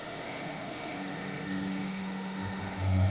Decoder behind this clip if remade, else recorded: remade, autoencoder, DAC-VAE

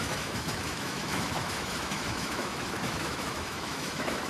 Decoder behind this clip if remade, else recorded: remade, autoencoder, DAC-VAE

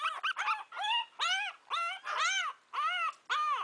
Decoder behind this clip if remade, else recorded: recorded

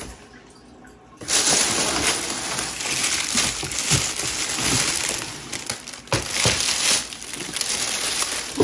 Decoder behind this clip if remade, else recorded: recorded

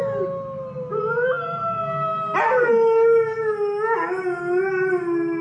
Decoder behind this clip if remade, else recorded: recorded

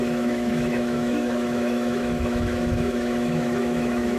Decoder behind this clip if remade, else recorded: remade, autoencoder, DAC-VAE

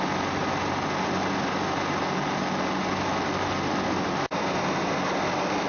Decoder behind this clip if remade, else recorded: recorded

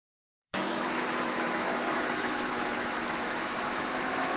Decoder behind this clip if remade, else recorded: remade, autoencoder, DAC-VAE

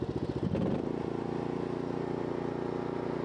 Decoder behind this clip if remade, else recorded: recorded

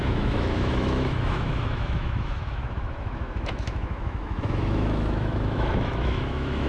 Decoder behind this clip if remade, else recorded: remade, autoencoder, DAC-VAE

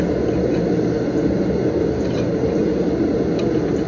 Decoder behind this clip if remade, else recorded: recorded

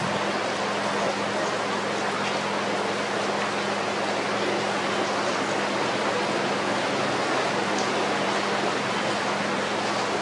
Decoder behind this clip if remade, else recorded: recorded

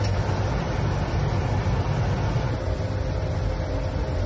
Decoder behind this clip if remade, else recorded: recorded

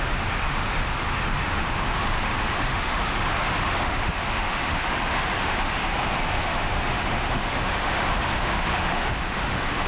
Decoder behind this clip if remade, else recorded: remade, autoencoder, DAC-VAE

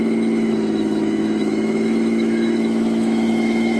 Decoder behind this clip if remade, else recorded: remade, autoencoder, DAC-VAE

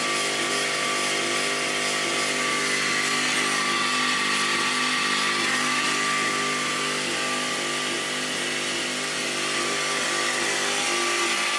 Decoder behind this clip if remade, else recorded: recorded